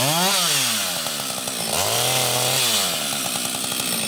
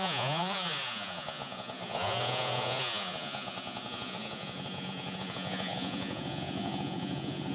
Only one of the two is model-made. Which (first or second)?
second